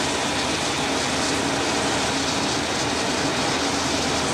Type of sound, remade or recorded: recorded